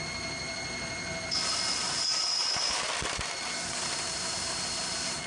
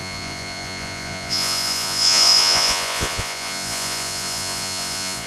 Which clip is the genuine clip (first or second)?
first